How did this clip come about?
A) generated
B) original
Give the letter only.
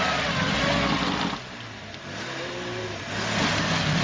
B